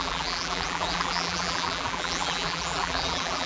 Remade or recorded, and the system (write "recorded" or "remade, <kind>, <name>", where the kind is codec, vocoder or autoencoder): remade, vocoder, BigVGAN v2